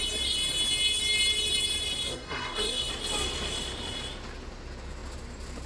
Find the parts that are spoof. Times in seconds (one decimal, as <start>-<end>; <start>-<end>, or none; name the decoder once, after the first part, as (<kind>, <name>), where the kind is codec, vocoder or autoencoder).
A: 2.1-2.9 (codec, SNAC)